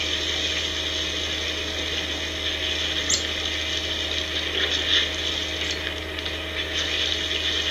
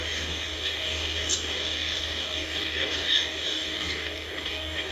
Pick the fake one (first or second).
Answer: second